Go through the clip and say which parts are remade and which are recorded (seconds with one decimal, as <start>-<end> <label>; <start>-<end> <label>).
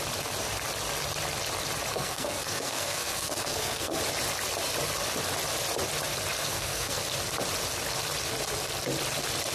0.0-1.9 recorded; 1.9-4.0 remade; 4.0-6.4 recorded; 6.4-7.0 remade; 7.0-9.5 recorded